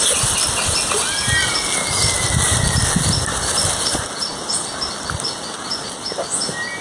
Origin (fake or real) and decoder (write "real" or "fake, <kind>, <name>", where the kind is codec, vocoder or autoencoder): real